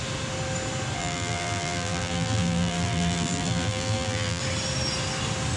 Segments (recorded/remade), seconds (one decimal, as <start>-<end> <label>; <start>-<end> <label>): 0.0-1.0 recorded; 1.0-4.4 remade; 4.4-5.6 recorded